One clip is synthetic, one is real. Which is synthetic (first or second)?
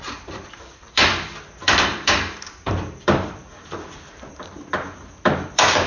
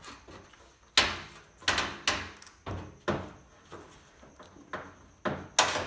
first